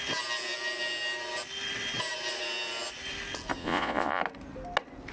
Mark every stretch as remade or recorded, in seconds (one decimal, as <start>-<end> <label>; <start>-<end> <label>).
0.0-3.6 recorded; 3.6-4.2 remade; 4.2-5.1 recorded